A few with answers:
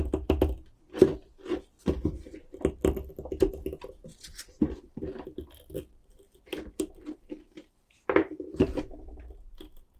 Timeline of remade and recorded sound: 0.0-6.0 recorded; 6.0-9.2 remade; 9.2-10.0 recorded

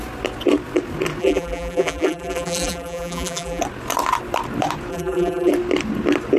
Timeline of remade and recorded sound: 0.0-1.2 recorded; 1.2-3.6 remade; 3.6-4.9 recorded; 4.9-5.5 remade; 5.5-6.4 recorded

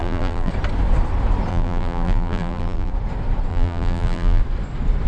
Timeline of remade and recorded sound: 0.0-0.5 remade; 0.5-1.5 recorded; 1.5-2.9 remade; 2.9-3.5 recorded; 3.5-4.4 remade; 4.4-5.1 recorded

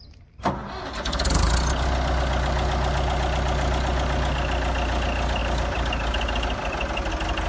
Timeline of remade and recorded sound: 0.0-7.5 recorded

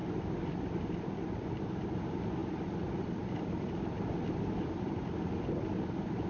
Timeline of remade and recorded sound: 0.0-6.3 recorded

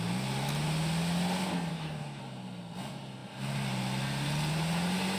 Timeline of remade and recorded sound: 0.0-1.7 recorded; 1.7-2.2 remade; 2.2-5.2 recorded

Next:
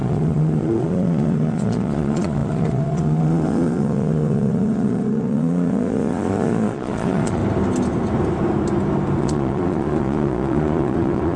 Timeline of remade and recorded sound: 0.0-7.4 remade; 7.4-9.2 recorded; 9.2-11.4 remade